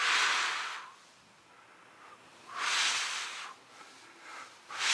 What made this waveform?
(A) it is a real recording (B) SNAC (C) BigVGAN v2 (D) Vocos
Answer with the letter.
A